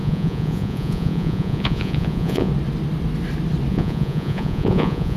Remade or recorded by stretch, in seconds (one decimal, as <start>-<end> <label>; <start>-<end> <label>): 0.0-2.5 remade; 2.5-3.7 recorded; 3.7-5.2 remade